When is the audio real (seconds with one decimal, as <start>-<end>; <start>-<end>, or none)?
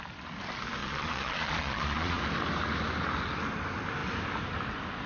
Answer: 0.0-0.8; 2.2-5.1